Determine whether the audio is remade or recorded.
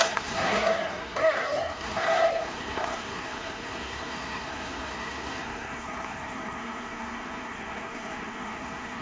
remade